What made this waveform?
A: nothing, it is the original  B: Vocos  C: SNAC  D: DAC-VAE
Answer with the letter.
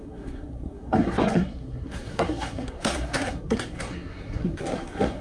C